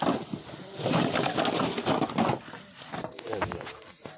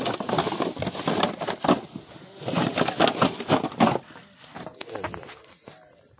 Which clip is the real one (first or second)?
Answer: first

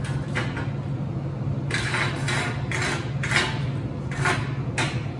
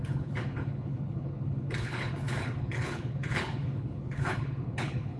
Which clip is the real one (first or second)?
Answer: first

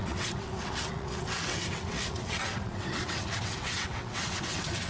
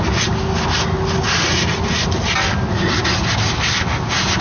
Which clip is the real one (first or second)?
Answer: second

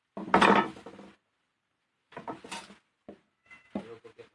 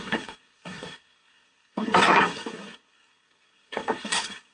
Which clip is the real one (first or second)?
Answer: first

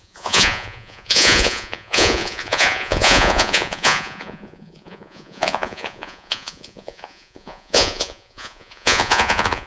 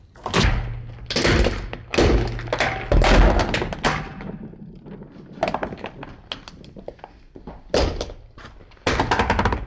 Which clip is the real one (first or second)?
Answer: second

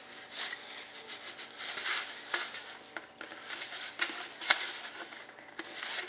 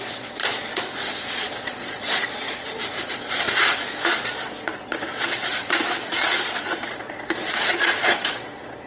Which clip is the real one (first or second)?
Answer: first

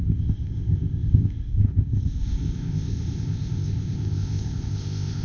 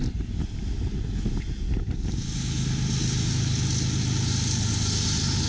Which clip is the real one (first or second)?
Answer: second